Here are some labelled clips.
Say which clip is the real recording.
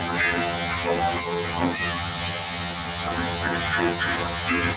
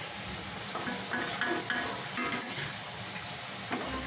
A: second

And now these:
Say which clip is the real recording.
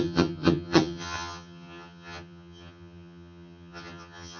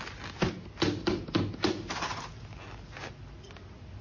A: second